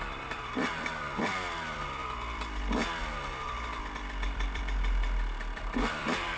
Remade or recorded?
remade